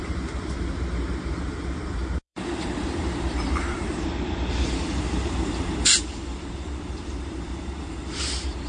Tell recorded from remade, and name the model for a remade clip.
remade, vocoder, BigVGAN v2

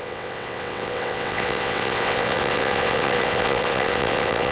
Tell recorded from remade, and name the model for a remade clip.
remade, vocoder, WaveNeXt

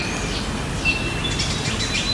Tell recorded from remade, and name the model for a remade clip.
recorded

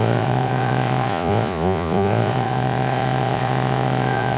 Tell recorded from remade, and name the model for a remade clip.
remade, vocoder, Vocos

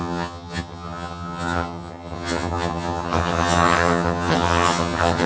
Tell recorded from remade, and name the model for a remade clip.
remade, vocoder, HiFi-GAN